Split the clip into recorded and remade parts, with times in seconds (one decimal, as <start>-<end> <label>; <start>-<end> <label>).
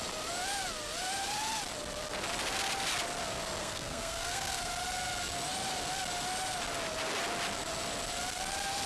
0.0-3.6 recorded; 3.6-4.7 remade; 4.7-8.9 recorded